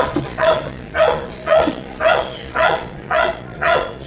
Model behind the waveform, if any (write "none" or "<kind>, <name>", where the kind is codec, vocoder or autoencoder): vocoder, Vocos